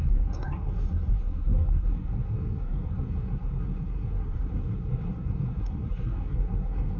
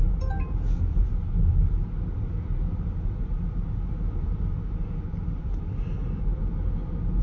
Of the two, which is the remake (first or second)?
first